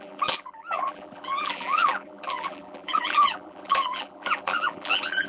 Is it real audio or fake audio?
fake